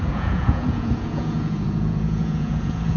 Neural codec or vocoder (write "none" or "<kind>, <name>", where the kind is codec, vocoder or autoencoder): vocoder, Vocos